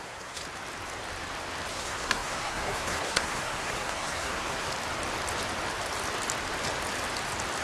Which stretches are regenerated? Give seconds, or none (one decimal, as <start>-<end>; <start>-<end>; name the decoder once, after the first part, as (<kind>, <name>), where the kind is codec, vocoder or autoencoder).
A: 0.0-0.4 (codec, SNAC); 1.7-4.7